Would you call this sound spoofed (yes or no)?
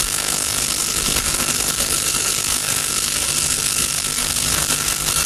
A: yes